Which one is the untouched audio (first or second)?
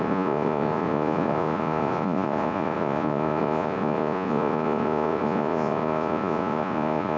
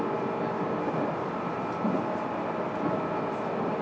second